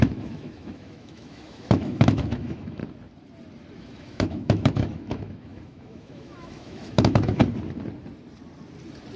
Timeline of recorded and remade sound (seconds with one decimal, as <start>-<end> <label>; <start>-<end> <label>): 0.0-2.8 remade; 2.8-3.8 recorded; 3.8-7.4 remade; 7.4-9.2 recorded